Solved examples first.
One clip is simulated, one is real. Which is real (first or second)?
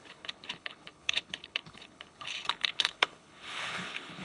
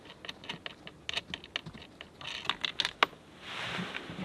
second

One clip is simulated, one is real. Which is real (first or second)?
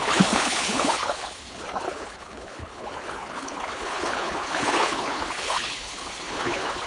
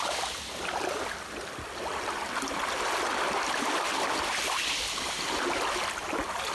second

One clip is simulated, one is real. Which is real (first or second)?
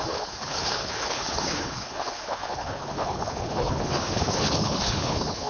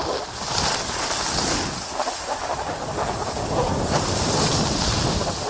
second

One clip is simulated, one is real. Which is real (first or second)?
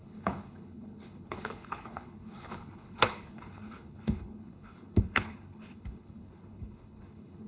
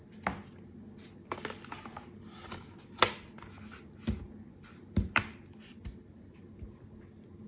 second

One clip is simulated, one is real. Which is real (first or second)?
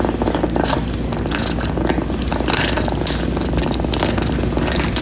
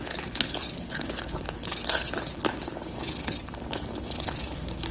first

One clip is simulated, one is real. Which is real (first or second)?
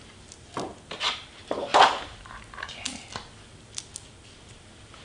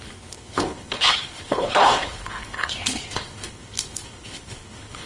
first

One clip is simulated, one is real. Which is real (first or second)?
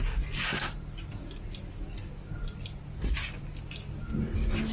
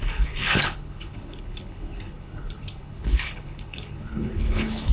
first